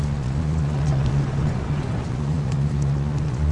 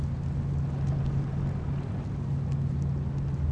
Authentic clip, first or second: second